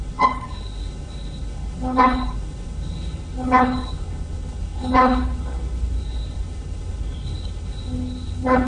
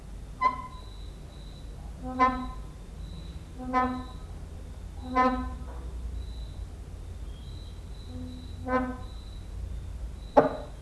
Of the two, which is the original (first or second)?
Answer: second